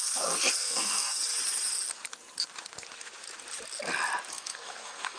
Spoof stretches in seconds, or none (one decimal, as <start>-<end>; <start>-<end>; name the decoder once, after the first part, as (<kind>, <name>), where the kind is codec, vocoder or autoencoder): 0.0-1.2 (codec, SNAC); 4.3-5.2